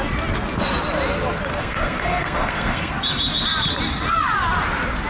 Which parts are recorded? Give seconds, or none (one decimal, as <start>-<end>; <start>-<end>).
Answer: 0.0-1.5; 2.9-5.1